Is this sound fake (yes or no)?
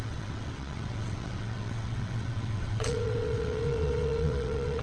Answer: yes